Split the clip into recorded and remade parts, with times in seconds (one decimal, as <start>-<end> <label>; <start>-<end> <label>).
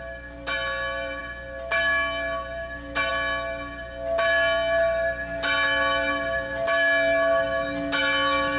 0.0-8.6 recorded